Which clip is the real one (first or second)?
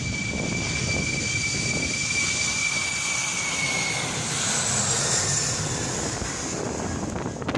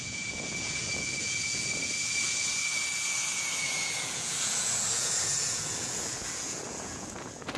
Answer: first